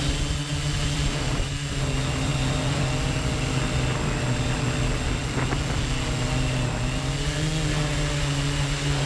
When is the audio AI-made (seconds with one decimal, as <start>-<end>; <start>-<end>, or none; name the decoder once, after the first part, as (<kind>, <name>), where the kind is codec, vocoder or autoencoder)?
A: none